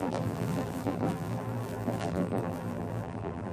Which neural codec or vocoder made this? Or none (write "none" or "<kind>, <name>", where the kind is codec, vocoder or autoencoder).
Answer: vocoder, BigVGAN v2